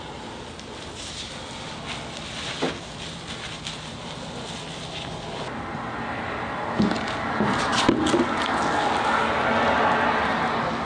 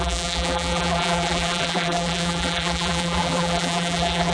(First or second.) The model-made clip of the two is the second